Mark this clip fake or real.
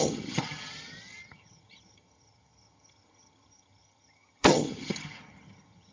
fake